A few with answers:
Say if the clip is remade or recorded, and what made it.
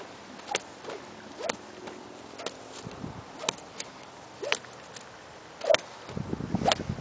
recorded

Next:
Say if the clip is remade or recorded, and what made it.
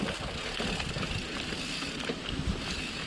recorded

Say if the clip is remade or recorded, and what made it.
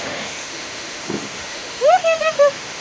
remade, autoencoder, DAC-VAE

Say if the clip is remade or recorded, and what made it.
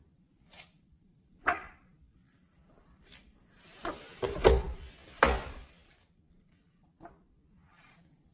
remade, vocoder, BigVGAN v2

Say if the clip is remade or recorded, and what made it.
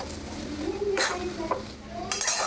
recorded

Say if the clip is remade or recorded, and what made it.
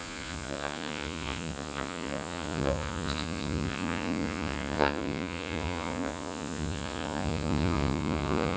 remade, vocoder, Vocos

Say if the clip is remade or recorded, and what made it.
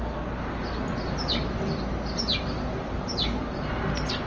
recorded